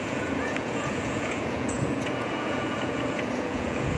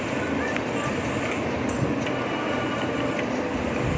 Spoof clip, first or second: first